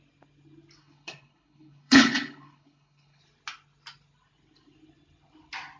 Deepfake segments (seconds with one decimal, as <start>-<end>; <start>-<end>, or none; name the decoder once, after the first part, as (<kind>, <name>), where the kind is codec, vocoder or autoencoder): 0.8-3.2 (codec, HILCodec)